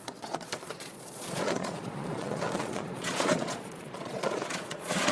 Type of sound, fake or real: fake